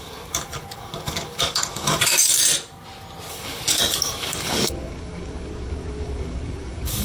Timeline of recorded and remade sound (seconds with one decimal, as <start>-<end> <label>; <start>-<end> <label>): 0.0-2.4 remade; 2.4-3.3 recorded; 3.3-7.0 remade